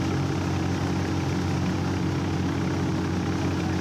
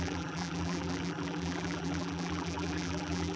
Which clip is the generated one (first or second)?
second